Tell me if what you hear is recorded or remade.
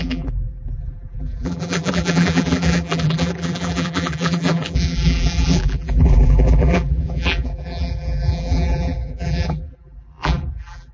remade